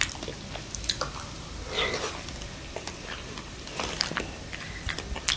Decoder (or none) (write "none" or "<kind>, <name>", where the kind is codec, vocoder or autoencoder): vocoder, BigVGAN v2